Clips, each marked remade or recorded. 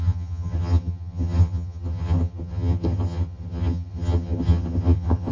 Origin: remade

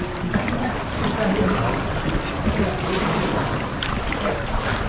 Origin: recorded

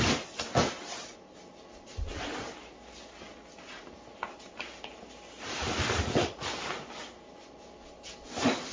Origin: recorded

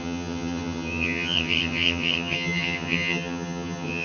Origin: remade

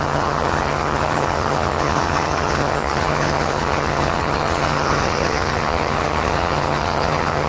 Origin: remade